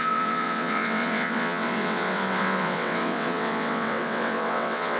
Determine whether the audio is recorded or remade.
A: remade